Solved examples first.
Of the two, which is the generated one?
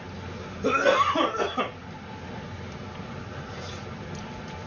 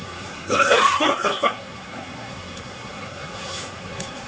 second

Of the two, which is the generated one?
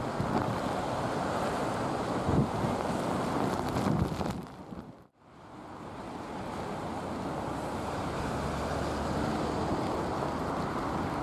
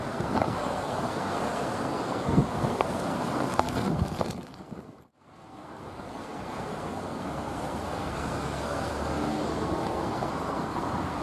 second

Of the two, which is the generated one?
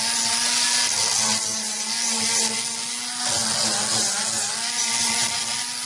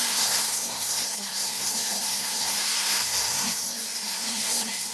second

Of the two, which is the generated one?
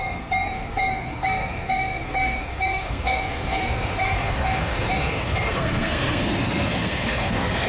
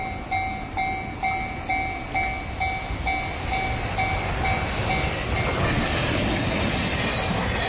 first